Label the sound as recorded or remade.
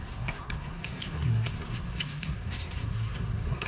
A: remade